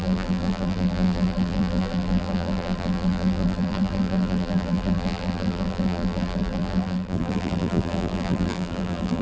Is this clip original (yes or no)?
no